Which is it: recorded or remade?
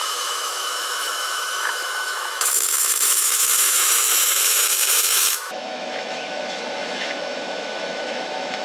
remade